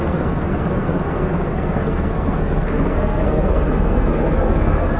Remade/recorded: remade